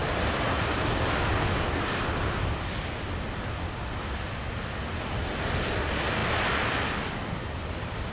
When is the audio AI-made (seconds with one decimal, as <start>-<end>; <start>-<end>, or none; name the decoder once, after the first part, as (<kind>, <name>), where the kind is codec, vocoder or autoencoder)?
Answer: none